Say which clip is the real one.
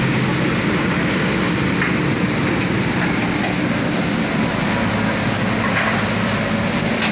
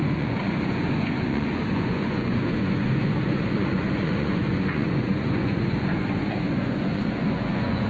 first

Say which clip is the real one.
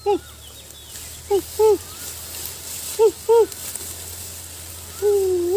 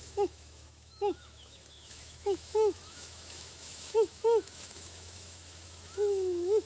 first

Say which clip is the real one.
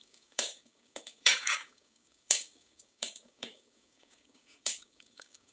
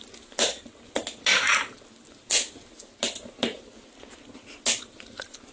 second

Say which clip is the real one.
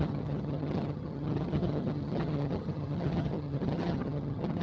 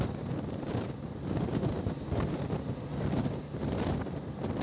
second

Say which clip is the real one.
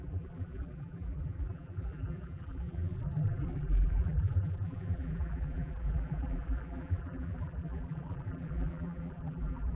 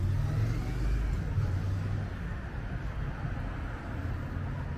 second